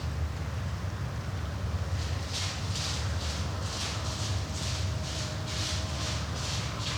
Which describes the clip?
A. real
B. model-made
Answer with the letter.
A